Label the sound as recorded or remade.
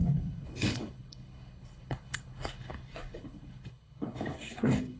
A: remade